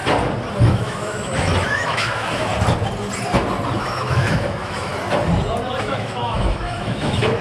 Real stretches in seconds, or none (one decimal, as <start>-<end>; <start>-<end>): 0.0-0.6; 2.5-3.8; 4.9-5.8